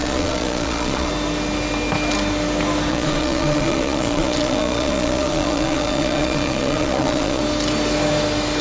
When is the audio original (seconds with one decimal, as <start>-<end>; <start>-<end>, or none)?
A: 1.1-2.9; 7.4-8.6